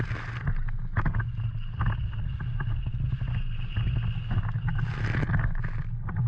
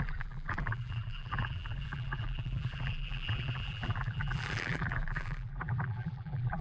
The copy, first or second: second